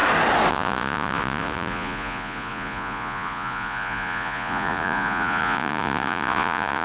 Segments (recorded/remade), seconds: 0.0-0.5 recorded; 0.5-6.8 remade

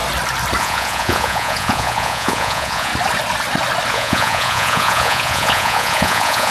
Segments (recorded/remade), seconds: 0.0-0.6 recorded; 0.6-2.9 remade; 2.9-3.9 recorded; 3.9-6.5 remade

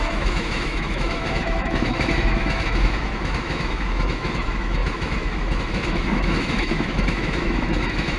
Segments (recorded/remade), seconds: 0.0-8.2 remade

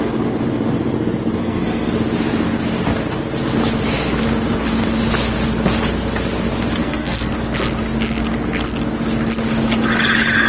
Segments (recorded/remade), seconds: 0.0-1.4 recorded; 1.4-1.9 remade; 1.9-6.8 recorded; 6.8-7.3 remade; 7.3-10.5 recorded

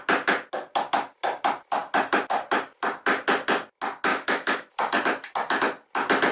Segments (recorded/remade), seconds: 0.0-4.1 recorded; 4.1-4.7 remade; 4.7-6.3 recorded

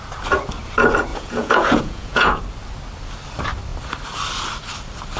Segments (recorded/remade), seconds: 0.0-1.1 recorded; 1.1-2.4 remade; 2.4-5.2 recorded